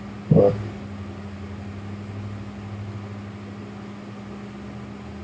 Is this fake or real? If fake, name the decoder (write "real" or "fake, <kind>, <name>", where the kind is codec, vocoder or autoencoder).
real